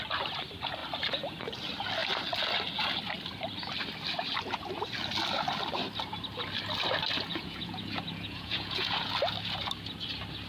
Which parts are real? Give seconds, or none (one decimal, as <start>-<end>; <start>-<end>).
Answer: 0.0-7.3; 9.1-10.5